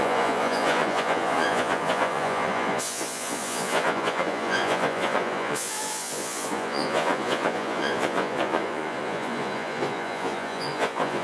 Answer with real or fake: fake